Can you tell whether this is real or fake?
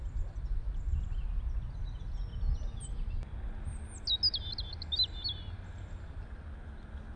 real